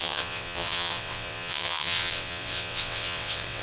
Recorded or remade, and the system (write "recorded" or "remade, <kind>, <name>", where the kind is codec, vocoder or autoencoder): remade, vocoder, WaveNeXt